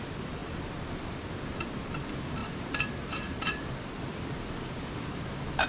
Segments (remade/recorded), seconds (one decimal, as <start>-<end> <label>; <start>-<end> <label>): 0.0-2.4 recorded; 2.4-5.7 remade